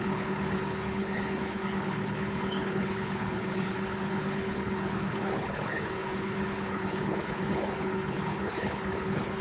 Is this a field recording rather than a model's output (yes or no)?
no